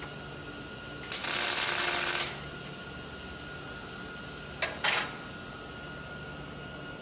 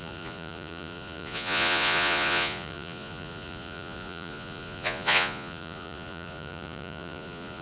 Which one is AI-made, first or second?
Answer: second